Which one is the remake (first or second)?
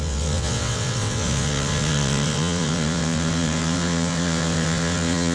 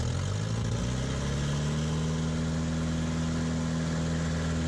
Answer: first